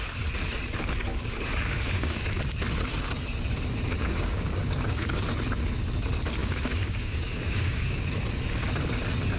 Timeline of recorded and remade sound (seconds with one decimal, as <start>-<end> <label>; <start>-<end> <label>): 0.0-1.1 recorded; 1.1-2.3 remade; 2.3-4.0 recorded; 4.0-5.2 remade; 5.2-6.4 recorded; 6.4-8.0 remade; 8.0-9.4 recorded